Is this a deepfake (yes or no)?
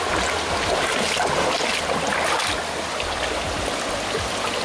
no